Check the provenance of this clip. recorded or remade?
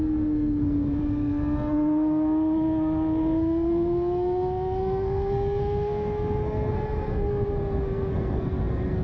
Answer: remade